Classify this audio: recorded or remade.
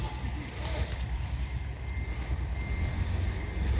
recorded